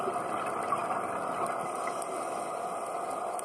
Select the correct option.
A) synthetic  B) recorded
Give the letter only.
B